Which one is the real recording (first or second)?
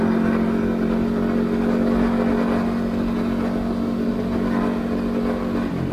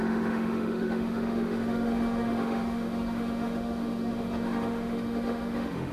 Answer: first